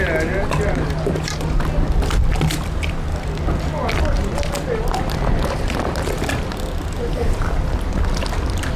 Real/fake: real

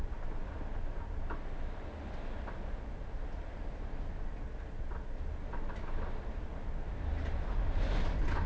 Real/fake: real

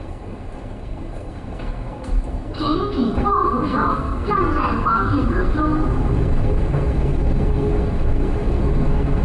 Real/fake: fake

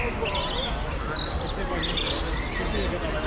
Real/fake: real